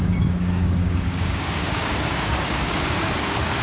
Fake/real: fake